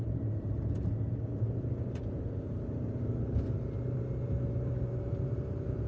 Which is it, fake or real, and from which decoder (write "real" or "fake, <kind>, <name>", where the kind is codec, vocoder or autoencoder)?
fake, vocoder, BigVGAN v2